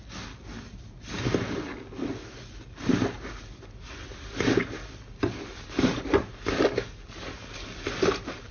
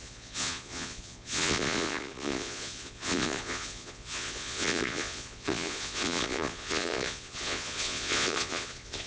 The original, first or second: first